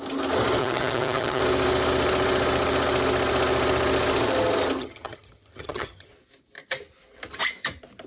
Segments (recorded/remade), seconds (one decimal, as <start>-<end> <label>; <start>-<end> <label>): 0.0-0.6 recorded; 0.6-1.4 remade; 1.4-4.8 recorded; 4.8-6.1 remade; 6.1-8.1 recorded